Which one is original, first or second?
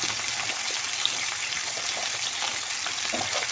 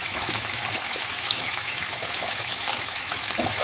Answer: first